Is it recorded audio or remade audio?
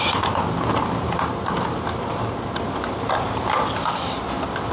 recorded